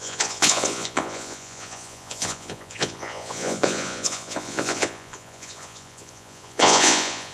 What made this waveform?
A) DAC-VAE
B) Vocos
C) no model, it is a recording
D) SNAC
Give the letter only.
B